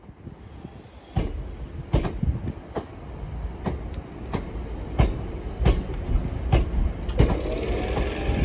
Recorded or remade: recorded